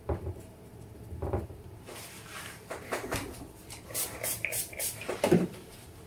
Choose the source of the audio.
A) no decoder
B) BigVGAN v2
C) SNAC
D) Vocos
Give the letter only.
B